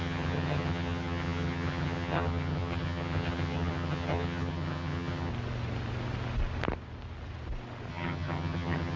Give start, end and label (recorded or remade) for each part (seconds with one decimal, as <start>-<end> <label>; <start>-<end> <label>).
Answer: 0.0-5.3 remade; 5.3-7.9 recorded; 7.9-9.0 remade